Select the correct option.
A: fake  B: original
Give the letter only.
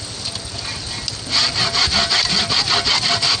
B